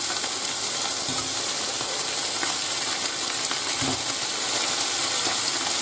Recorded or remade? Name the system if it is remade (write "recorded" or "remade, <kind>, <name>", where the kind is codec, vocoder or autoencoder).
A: recorded